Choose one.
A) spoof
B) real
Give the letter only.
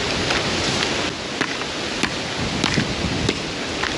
B